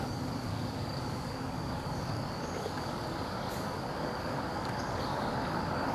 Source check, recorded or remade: remade